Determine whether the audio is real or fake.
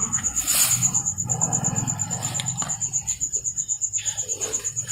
real